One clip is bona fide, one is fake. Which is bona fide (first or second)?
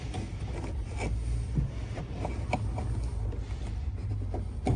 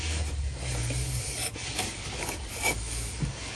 first